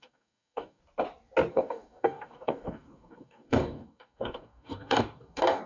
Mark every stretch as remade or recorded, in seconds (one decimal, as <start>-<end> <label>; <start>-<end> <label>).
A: 0.0-0.8 remade; 0.8-1.5 recorded; 1.5-5.7 remade